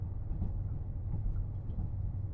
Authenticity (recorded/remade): remade